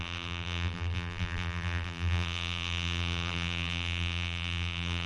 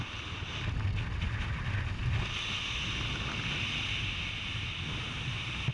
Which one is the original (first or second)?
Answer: second